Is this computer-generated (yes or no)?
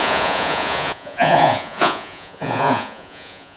yes